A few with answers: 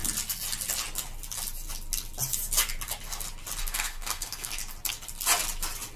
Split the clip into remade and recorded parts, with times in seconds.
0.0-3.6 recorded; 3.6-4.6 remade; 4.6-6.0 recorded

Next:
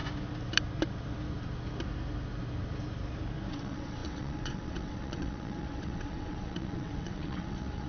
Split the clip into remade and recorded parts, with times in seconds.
0.0-3.5 recorded; 3.5-7.9 remade

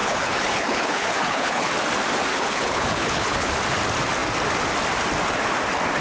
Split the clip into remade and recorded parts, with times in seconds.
0.0-1.7 remade; 1.7-2.3 recorded; 2.3-3.5 remade; 3.5-6.0 recorded

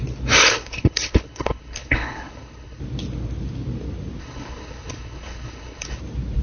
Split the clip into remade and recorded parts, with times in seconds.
0.0-0.4 recorded; 0.4-2.8 remade; 2.8-4.2 recorded; 4.2-6.0 remade; 6.0-6.4 recorded

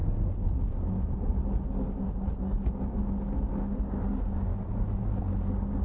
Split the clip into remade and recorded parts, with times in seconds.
0.0-5.8 recorded

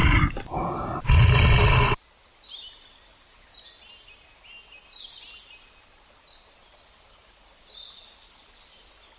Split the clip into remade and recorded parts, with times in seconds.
0.0-9.2 recorded